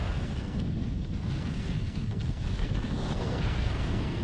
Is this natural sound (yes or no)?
no